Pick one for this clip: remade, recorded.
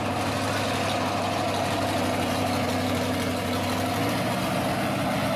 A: recorded